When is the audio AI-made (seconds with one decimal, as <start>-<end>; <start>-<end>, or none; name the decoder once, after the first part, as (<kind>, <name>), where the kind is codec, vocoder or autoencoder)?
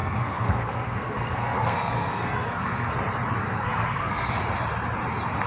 0.0-2.9 (codec, SNAC); 3.4-4.3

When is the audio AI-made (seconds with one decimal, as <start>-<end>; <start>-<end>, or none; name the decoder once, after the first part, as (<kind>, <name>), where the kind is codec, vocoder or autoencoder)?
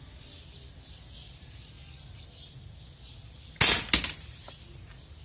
none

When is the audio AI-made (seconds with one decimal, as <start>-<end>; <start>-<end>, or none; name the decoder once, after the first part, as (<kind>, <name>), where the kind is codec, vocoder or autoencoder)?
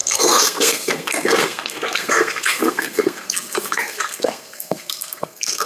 0.0-5.7 (codec, SNAC)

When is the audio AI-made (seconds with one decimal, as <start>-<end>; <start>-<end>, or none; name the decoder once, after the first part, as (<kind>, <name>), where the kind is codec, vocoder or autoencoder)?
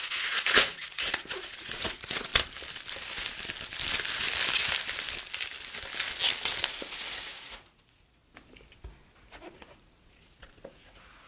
0.0-2.3 (vocoder, Vocos); 6.7-8.2; 9.3-11.3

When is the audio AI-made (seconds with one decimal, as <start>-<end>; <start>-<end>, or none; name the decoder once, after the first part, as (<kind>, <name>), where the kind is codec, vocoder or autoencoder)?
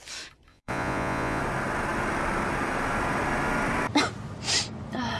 0.5-1.4 (vocoder, Vocos)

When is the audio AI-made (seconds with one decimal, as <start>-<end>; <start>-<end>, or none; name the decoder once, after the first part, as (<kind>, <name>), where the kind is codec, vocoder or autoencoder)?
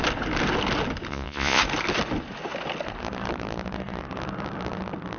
1.1-1.6 (vocoder, Vocos)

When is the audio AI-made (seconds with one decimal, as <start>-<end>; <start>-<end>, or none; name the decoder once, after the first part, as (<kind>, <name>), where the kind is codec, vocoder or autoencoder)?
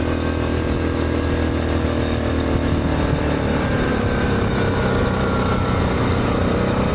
3.9-4.5 (vocoder, BigVGAN v2)